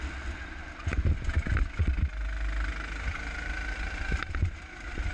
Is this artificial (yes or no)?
no